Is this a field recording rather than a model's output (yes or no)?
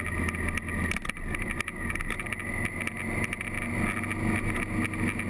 yes